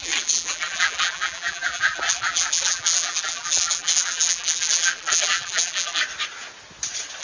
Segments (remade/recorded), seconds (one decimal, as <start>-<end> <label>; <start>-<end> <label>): 0.0-6.0 remade; 6.0-7.2 recorded